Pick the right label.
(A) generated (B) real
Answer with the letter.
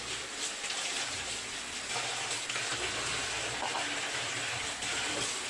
B